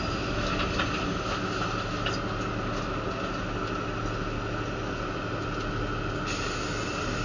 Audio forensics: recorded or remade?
recorded